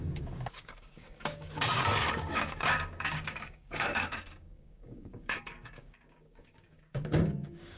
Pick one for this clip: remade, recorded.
remade